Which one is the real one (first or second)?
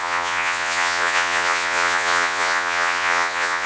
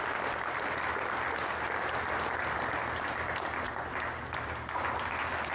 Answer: second